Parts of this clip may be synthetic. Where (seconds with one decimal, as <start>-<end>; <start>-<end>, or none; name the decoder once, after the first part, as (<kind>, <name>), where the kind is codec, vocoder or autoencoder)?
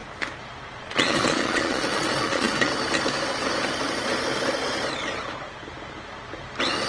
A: 0.7-2.7 (vocoder, Vocos)